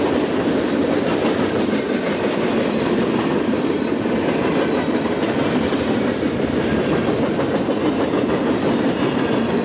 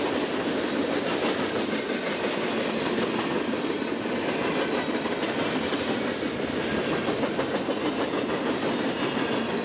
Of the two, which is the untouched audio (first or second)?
second